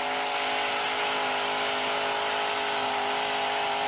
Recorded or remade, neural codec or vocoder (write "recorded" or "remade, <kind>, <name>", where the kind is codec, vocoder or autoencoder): recorded